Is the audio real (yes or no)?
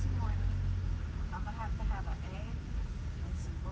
no